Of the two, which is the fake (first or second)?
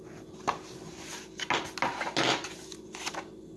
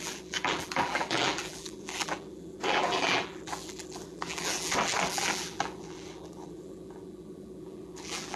second